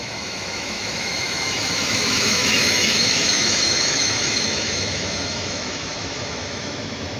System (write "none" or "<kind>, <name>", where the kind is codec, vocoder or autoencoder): autoencoder, DAC-VAE